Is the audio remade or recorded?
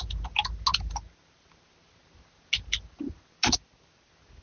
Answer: recorded